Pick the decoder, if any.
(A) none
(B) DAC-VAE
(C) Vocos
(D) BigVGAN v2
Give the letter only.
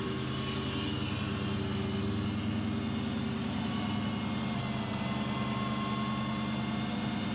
A